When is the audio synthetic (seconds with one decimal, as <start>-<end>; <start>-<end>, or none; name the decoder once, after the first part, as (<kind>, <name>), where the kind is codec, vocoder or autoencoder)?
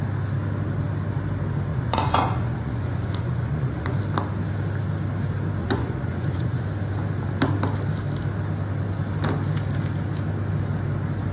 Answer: 1.7-4.0 (vocoder, Vocos); 5.6-6.6